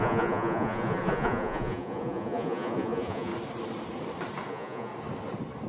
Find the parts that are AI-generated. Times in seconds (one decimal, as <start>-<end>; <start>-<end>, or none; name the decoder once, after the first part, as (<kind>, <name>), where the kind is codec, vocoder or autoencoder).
0.0-3.3 (vocoder, Vocos); 4.5-4.9